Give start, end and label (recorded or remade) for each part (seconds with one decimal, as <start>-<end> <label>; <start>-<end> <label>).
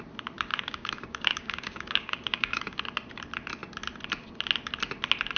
0.0-0.5 recorded; 0.5-2.8 remade; 2.8-5.4 recorded